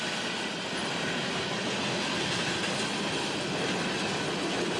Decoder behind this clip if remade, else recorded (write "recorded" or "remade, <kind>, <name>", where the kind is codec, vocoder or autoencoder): recorded